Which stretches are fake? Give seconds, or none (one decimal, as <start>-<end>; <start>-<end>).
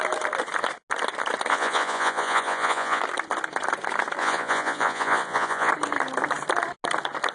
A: 1.5-3.0; 4.2-5.7